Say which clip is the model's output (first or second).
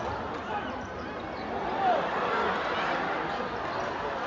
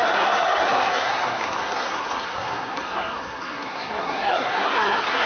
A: second